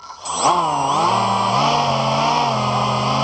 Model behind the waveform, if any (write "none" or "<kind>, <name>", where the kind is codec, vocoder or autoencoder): none